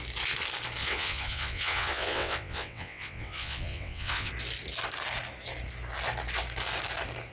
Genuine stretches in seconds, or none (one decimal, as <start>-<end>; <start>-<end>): 0.0-0.8; 4.3-7.3